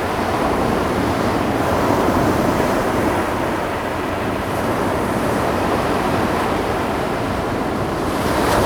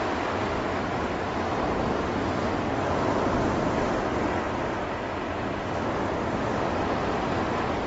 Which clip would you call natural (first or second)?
second